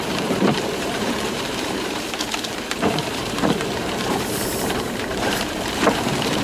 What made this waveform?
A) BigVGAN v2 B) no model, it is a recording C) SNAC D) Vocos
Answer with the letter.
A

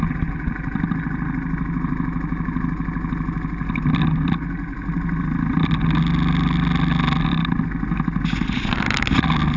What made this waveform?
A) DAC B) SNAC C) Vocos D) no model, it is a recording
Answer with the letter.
D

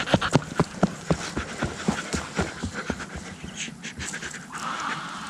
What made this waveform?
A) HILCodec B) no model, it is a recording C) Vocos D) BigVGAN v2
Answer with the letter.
B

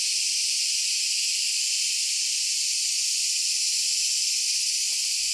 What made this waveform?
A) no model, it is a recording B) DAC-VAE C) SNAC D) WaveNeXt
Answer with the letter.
A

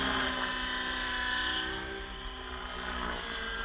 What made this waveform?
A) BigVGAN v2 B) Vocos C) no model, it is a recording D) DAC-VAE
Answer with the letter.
C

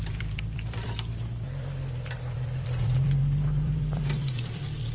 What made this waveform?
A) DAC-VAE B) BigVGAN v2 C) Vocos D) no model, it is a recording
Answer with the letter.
B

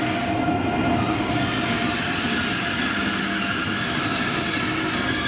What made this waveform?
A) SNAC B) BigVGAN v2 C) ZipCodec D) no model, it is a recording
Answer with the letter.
D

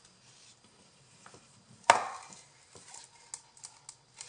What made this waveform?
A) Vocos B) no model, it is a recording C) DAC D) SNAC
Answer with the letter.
B